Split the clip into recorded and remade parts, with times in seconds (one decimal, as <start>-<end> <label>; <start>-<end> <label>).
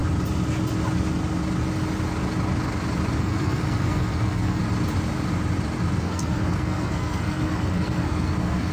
0.0-3.2 recorded; 3.2-4.6 remade; 4.6-6.0 recorded; 6.0-8.7 remade